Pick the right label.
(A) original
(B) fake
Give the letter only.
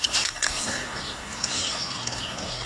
B